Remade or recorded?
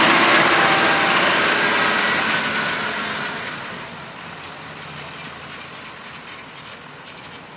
recorded